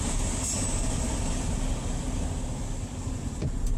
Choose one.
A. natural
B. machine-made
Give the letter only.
A